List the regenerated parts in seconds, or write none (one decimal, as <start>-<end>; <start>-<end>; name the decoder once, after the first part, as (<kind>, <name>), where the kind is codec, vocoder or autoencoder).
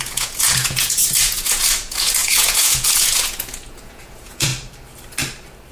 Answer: 0.0-4.5 (vocoder, Vocos)